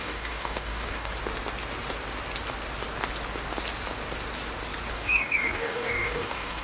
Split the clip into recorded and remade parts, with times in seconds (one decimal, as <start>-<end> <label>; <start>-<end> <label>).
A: 0.0-1.1 remade; 1.1-4.9 recorded; 4.9-6.6 remade